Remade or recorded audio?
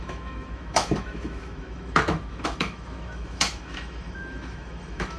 remade